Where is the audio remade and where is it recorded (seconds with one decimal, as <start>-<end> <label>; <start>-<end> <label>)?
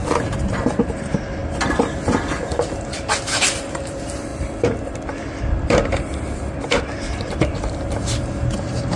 0.0-1.4 remade; 1.4-3.2 recorded; 3.2-4.3 remade; 4.3-6.8 recorded; 6.8-9.0 remade